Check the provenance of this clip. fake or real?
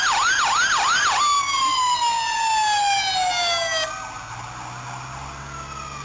real